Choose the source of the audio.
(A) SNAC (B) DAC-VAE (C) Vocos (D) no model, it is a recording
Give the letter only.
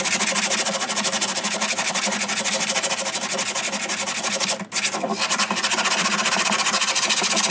D